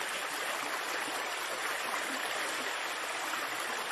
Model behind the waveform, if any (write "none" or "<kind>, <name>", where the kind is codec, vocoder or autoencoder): none